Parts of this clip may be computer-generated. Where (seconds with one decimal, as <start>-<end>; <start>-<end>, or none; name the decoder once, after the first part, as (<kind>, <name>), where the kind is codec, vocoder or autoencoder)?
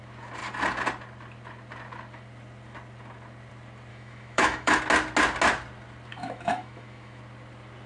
3.9-4.8 (autoencoder, DAC-VAE); 6.1-7.2